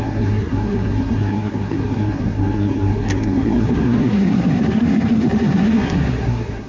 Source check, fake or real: fake